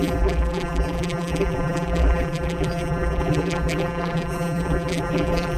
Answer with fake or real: fake